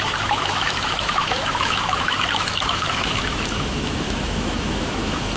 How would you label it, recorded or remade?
remade